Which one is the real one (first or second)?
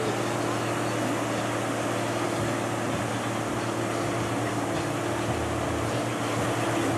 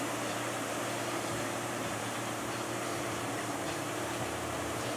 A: first